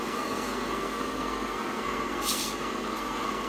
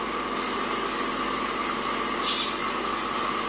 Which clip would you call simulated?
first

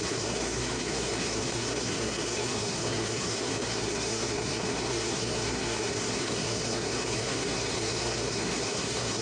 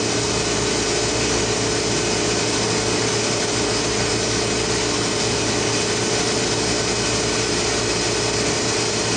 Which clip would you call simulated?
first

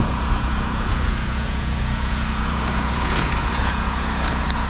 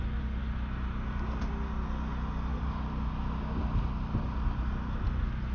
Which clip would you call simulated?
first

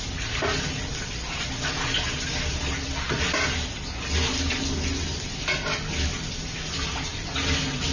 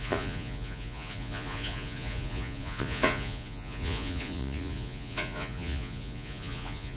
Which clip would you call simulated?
second